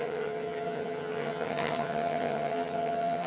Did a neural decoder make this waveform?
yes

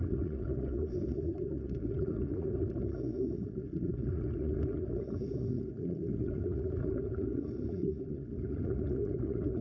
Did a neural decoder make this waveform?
yes